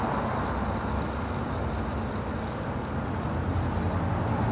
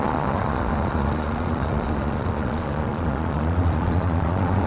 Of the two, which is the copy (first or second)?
second